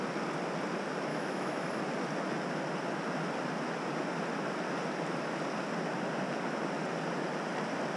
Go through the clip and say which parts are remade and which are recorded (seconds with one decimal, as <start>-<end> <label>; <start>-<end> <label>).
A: 0.0-1.1 recorded; 1.1-1.8 remade; 1.8-8.0 recorded